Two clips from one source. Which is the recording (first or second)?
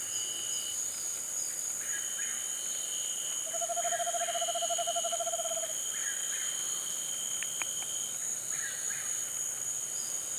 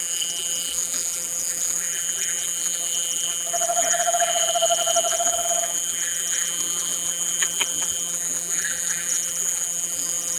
first